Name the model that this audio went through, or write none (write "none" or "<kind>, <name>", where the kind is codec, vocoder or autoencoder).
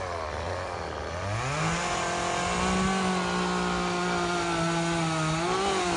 none